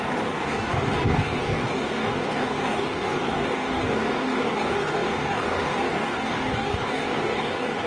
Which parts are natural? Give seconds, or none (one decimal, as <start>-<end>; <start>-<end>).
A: none